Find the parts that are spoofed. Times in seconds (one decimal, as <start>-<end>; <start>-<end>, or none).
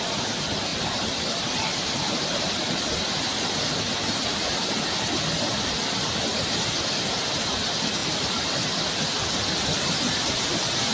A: 0.7-2.9; 8.0-8.8